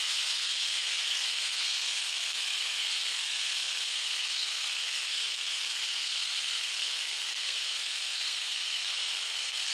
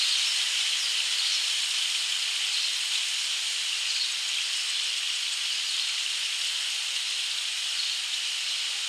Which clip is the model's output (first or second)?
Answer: first